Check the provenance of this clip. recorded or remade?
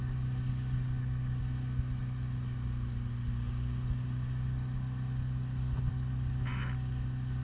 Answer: recorded